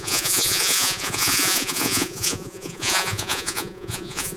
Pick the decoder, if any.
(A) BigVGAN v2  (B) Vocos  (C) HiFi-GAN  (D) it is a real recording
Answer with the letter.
B